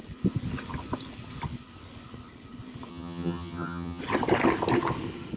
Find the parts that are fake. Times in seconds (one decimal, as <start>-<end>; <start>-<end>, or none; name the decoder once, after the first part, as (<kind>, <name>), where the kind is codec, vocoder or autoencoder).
2.9-4.0 (vocoder, HiFi-GAN)